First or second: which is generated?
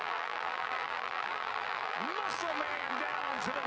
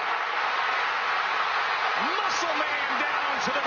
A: first